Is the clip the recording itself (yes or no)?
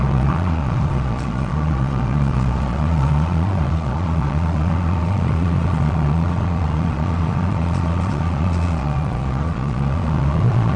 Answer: no